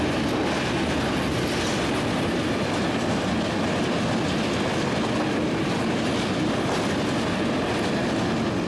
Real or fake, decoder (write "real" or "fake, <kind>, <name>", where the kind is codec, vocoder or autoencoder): real